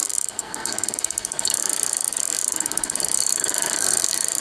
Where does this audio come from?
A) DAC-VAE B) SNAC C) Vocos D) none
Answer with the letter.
B